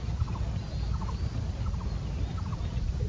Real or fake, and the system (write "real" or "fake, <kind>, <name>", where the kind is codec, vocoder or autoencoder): real